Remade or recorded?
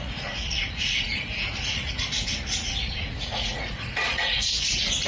remade